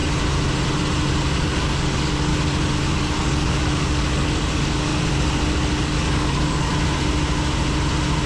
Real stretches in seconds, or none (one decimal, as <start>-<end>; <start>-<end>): 0.0-1.2; 2.3-2.9; 4.9-5.8; 6.7-8.3